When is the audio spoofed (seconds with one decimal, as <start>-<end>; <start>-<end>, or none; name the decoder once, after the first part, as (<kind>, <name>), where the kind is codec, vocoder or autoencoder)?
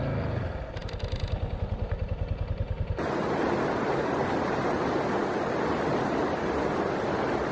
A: none